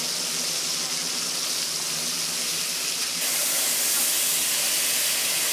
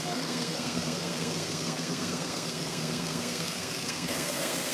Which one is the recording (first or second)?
first